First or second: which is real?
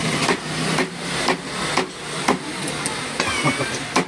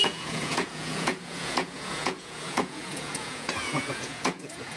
first